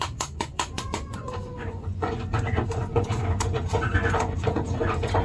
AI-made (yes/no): yes